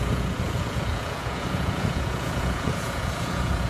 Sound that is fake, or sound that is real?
fake